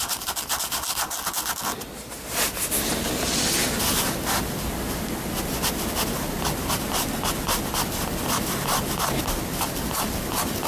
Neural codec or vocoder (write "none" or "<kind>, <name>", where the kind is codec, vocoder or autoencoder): none